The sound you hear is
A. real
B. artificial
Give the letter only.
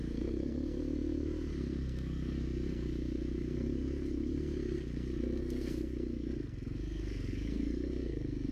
B